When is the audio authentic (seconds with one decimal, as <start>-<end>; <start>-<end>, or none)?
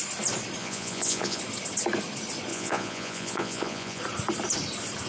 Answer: 0.0-0.6; 1.4-2.5; 4.0-5.1